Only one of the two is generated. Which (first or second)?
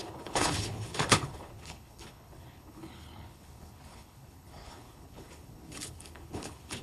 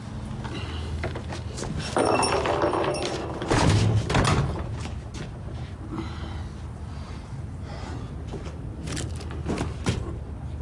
first